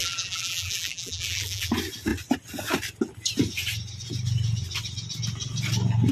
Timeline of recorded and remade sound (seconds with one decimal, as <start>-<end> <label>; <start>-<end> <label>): 0.0-1.7 remade; 1.7-6.1 recorded

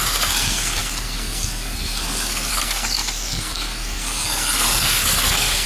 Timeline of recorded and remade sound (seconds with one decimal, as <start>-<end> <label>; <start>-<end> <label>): 0.0-5.7 remade

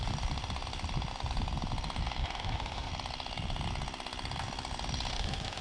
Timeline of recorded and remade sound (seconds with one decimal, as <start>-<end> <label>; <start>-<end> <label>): 0.0-2.2 recorded; 2.2-2.9 remade; 2.9-5.1 recorded; 5.1-5.6 remade

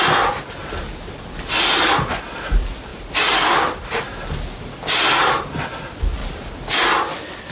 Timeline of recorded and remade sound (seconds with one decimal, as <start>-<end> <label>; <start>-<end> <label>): 0.0-7.5 recorded

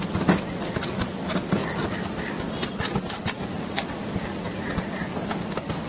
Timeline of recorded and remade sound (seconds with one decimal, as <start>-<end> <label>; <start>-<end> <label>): 0.0-5.9 recorded